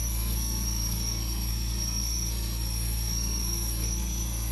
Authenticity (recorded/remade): remade